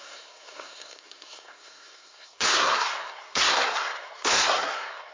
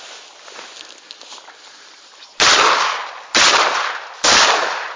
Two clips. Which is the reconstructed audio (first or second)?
first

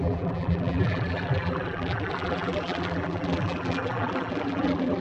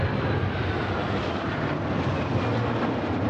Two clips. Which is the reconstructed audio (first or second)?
first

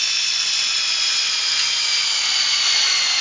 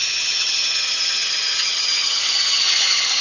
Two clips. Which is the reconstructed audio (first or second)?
second